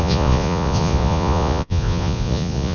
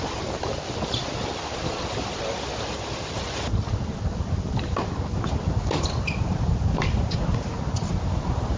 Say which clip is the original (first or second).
second